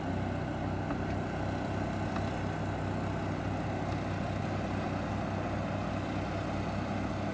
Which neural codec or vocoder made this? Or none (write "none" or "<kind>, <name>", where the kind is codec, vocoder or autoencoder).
none